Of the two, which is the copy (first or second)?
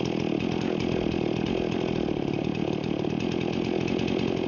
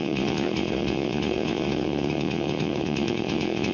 second